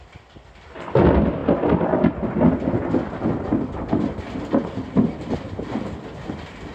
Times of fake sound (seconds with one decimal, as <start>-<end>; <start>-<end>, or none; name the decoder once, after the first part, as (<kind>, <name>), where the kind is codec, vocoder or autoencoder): none